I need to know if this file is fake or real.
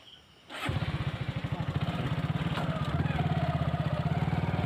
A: real